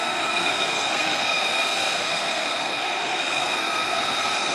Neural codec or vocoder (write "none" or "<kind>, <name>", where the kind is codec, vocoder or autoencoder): codec, SNAC